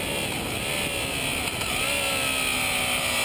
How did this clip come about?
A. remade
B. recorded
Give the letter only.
B